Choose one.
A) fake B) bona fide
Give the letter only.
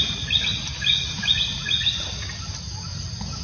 B